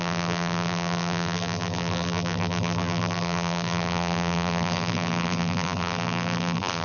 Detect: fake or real fake